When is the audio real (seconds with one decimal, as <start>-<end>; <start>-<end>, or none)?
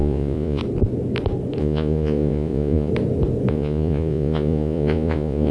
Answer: 0.6-1.6; 2.9-3.5